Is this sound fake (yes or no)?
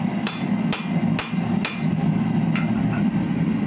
no